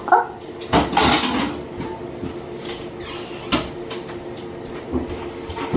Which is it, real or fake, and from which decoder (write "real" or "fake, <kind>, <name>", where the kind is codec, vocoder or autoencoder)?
real